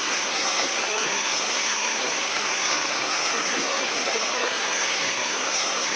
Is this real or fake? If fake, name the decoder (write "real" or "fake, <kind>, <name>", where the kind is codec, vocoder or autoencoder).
fake, codec, SNAC